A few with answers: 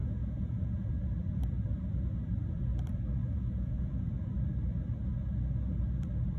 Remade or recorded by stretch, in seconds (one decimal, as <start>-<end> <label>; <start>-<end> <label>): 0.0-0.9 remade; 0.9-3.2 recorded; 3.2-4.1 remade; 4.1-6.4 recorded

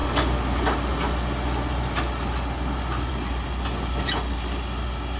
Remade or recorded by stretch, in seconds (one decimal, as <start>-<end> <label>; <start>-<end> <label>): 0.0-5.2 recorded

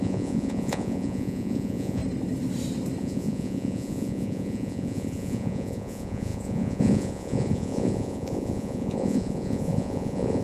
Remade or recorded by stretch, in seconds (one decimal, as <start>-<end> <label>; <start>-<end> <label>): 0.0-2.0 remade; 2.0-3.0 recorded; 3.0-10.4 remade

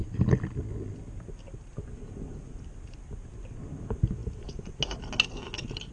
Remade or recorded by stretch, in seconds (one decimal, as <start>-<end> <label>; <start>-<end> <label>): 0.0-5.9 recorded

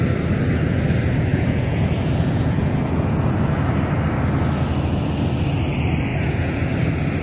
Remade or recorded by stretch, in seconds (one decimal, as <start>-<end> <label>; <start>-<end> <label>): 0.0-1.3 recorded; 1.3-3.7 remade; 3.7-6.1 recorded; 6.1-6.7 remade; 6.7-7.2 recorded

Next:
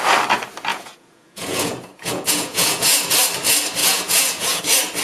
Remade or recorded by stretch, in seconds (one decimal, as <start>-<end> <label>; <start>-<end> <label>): 0.0-0.7 recorded; 0.7-3.1 remade; 3.1-3.8 recorded; 3.8-4.6 remade; 4.6-5.0 recorded

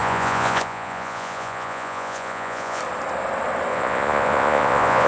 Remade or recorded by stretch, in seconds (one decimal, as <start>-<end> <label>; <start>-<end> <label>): 0.0-2.8 remade; 2.8-3.7 recorded; 3.7-5.1 remade